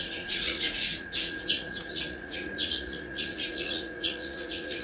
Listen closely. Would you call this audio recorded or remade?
remade